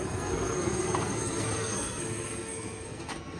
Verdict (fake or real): fake